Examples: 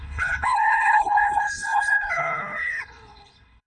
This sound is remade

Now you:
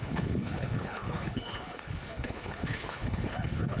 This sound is remade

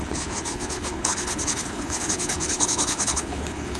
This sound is remade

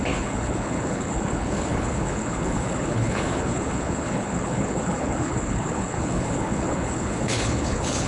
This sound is remade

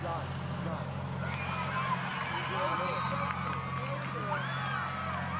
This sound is recorded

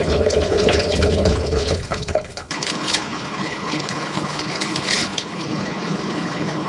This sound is remade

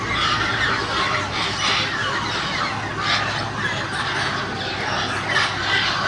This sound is recorded